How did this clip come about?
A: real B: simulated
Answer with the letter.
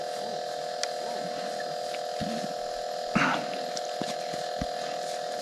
A